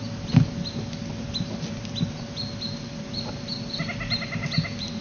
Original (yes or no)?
yes